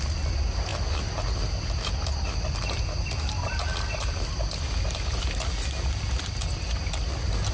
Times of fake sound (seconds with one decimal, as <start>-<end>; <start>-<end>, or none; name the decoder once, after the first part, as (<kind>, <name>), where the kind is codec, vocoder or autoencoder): none